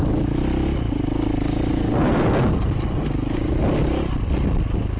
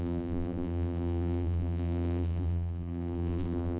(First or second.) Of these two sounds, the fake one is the second